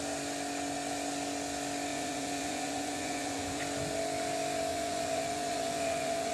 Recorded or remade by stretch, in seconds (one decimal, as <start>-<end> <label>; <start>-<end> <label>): 0.0-1.9 recorded; 1.9-3.6 remade; 3.6-4.7 recorded; 4.7-6.3 remade